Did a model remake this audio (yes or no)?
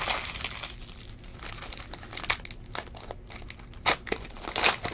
no